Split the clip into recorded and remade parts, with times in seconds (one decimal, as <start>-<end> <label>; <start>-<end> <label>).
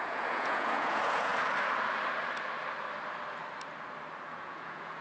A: 0.0-1.3 remade; 1.3-4.3 recorded; 4.3-5.0 remade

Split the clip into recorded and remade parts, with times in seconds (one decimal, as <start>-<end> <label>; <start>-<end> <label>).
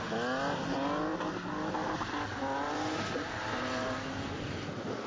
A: 0.0-5.1 recorded